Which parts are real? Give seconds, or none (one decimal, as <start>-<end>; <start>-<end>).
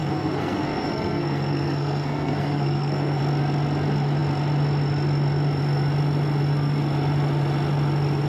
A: 3.2-8.3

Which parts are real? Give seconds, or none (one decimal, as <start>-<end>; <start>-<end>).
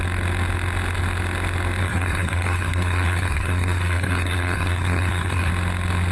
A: 0.0-1.8; 5.5-6.1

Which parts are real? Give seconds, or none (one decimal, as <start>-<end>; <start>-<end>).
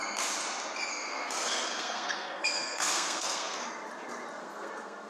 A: 0.0-0.9; 3.6-4.4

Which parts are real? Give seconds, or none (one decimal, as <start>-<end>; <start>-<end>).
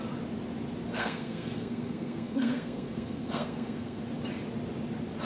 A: 0.0-0.9; 4.0-5.2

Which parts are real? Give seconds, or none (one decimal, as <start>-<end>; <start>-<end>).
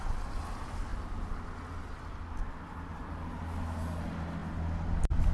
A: 0.0-5.3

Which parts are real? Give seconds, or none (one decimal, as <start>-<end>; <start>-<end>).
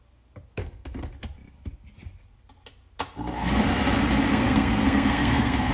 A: 0.0-0.5; 1.1-4.3